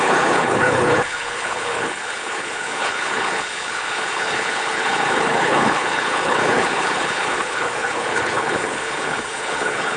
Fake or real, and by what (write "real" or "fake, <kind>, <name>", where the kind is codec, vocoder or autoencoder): fake, codec, HILCodec